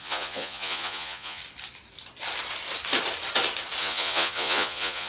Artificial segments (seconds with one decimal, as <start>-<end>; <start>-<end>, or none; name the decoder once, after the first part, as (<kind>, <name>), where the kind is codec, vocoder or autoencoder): 0.0-1.4 (vocoder, Vocos); 3.8-5.1